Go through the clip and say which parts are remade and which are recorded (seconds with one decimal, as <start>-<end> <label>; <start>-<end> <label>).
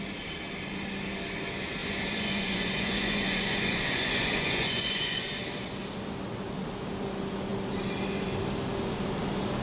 0.0-1.8 recorded; 1.8-5.2 remade; 5.2-9.6 recorded